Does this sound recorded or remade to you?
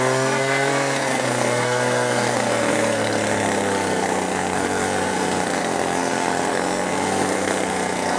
remade